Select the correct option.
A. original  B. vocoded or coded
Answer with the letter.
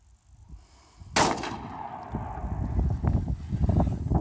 A